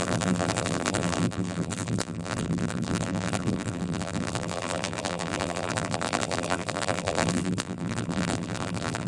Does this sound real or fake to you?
fake